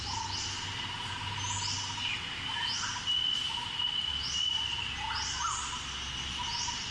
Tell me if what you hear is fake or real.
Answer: real